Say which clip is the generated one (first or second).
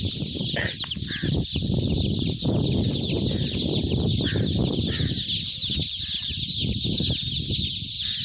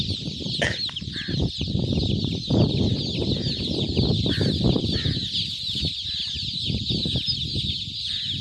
second